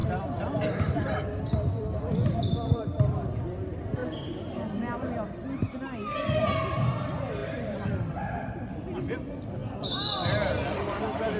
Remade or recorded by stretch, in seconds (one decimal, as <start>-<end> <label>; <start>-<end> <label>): 0.0-2.8 remade; 2.8-9.6 recorded; 9.6-10.5 remade; 10.5-11.4 recorded